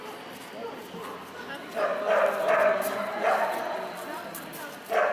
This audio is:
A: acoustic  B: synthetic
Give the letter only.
A